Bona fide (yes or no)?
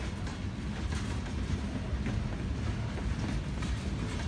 yes